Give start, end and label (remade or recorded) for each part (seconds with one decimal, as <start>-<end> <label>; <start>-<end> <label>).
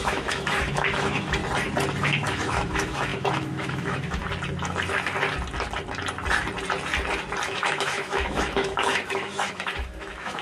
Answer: 0.0-1.4 remade; 1.4-2.0 recorded; 2.0-4.2 remade; 4.2-7.5 recorded; 7.5-10.4 remade